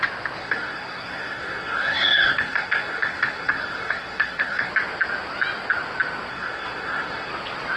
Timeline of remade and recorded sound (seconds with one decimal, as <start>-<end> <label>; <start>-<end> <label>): 0.0-0.4 recorded; 0.4-4.7 remade; 4.7-6.3 recorded; 6.3-7.3 remade; 7.3-7.8 recorded